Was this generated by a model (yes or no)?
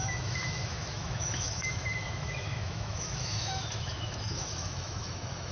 yes